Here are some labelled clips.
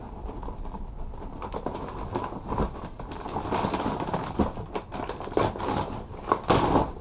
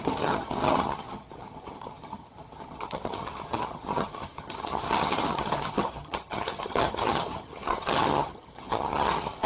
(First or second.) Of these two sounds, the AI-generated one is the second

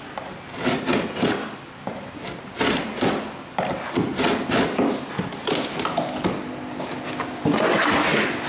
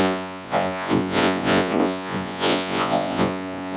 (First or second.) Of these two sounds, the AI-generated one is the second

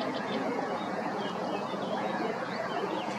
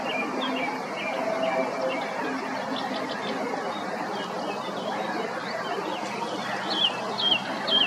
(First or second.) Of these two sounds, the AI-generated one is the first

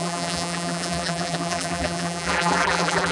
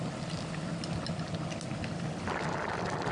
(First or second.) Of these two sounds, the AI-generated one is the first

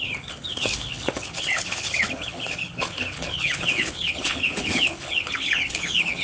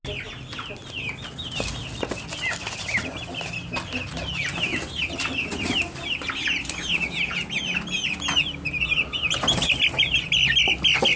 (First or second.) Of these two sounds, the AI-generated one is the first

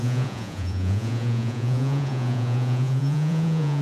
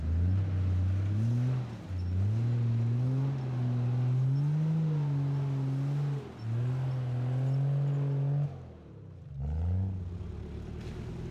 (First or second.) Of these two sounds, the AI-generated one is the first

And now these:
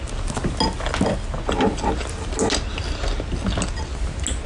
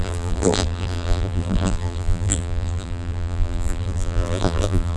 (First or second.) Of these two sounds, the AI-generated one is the second